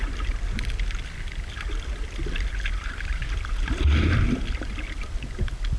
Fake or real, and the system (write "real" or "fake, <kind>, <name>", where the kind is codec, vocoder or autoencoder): real